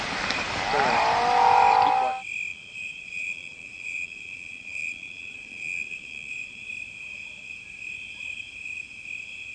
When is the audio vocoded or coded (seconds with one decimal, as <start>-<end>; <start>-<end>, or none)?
2.5-6.7